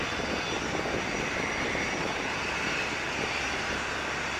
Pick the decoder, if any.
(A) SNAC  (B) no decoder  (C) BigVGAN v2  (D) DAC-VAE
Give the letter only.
B